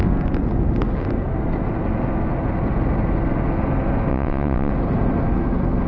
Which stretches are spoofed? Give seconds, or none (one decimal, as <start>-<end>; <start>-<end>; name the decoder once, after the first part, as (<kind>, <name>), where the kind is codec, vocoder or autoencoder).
4.1-4.7 (vocoder, WaveNeXt)